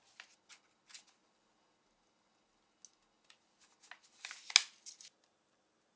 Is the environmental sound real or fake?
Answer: real